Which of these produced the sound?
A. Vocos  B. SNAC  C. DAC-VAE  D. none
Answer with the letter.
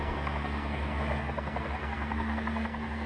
B